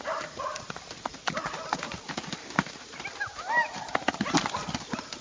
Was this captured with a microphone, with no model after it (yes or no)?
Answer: yes